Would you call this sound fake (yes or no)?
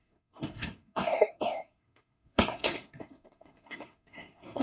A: yes